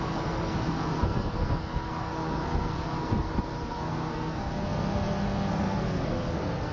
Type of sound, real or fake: fake